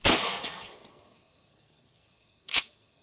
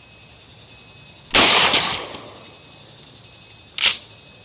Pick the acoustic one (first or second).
second